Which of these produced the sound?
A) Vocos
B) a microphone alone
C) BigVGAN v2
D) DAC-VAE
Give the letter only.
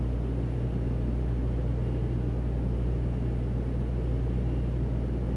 B